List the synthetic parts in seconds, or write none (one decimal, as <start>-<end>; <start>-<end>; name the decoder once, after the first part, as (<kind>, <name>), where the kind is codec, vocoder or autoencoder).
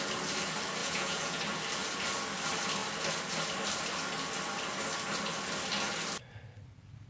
0.8-1.4 (vocoder, Vocos)